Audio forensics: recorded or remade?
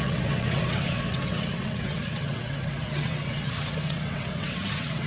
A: remade